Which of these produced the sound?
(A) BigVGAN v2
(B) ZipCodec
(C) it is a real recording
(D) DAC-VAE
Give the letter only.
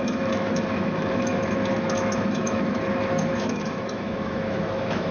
D